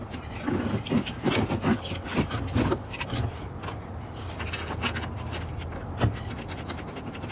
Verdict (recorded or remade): recorded